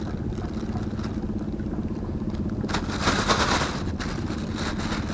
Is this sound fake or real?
real